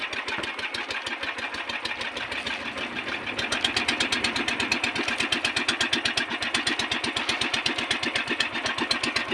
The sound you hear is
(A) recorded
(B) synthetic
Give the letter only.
A